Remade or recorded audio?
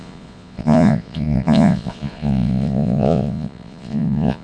remade